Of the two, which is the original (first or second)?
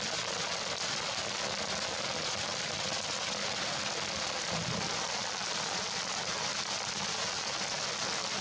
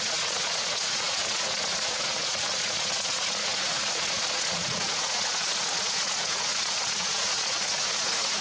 first